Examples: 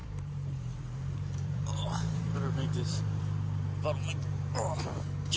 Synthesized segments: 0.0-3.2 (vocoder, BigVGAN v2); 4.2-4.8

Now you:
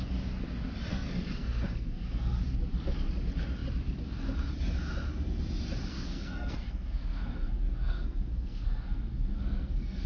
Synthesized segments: 0.9-2.4 (codec, SNAC); 5.9-10.1

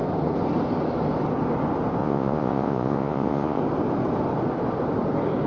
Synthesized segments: 2.0-3.6 (vocoder, Vocos)

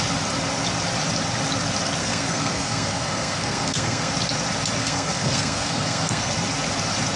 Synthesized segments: 2.0-4.1 (codec, SNAC); 4.8-6.3

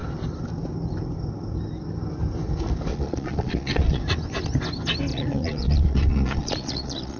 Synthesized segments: 2.9-4.0 (vocoder, Vocos); 5.1-7.2

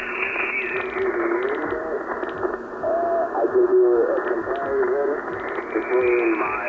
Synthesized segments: none

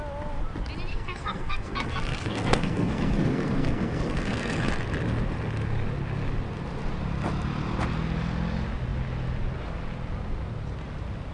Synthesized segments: 0.9-4.7 (codec, SNAC)

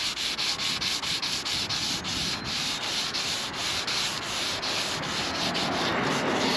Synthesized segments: 2.1-3.6 (vocoder, BigVGAN v2)